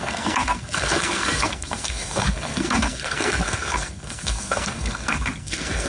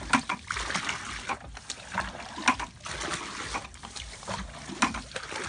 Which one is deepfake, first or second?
first